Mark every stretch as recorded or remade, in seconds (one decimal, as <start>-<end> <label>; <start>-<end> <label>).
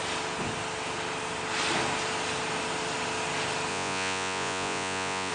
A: 0.0-3.7 recorded; 3.7-5.3 remade